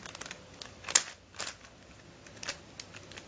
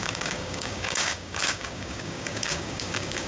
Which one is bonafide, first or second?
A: first